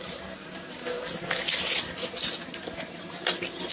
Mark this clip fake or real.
real